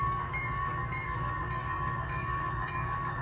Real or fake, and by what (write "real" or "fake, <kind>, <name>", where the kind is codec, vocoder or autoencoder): fake, codec, DAC